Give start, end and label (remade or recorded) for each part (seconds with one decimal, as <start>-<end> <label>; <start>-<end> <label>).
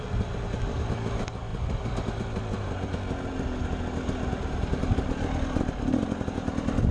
0.0-6.9 recorded